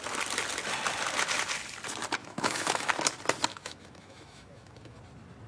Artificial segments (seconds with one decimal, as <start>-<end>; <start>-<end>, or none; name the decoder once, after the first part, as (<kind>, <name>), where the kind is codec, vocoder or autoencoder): 2.2-2.9 (autoencoder, DAC-VAE); 3.5-5.0